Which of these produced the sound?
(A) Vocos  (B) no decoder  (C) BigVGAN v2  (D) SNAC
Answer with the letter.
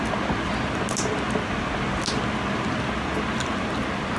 B